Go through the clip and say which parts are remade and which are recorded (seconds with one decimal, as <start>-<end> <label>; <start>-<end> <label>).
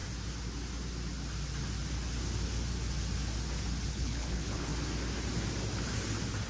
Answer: 0.0-3.9 recorded; 3.9-4.7 remade; 4.7-6.5 recorded